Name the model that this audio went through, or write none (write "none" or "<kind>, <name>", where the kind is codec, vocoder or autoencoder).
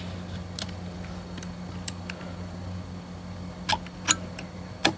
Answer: none